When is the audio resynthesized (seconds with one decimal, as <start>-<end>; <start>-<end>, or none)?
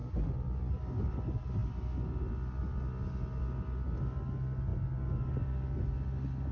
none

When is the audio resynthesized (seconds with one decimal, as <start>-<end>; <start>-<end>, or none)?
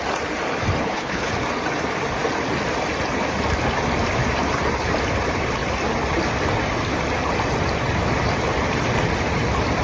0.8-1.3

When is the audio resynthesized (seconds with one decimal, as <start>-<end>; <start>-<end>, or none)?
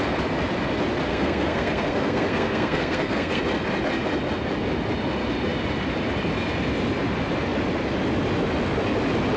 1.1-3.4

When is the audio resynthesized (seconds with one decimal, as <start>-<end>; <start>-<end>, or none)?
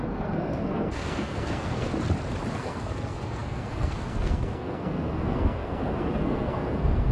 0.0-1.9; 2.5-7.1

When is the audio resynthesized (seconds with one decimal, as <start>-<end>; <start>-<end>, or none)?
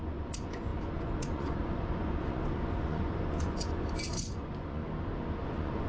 0.0-4.8; 5.4-5.9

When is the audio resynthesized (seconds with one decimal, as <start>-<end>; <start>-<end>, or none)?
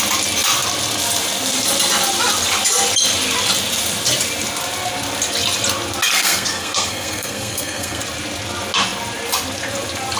6.1-8.0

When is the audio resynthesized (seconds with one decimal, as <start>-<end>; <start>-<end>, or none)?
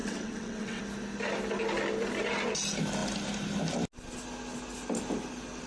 0.0-0.8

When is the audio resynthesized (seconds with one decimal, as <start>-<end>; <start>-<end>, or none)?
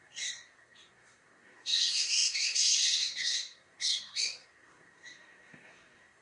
0.0-6.2